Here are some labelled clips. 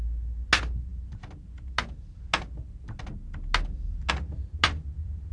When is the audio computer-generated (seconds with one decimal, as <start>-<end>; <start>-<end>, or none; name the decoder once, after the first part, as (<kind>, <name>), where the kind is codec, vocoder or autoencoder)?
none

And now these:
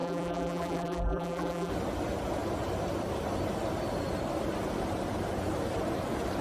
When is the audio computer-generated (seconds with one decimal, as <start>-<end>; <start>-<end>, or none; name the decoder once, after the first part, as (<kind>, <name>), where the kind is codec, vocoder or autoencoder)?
0.0-1.7 (vocoder, BigVGAN v2)

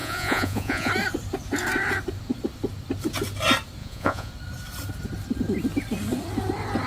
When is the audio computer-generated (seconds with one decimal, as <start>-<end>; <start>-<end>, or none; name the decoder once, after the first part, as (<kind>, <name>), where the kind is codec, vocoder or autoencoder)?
0.0-0.9 (vocoder, Vocos); 3.8-4.3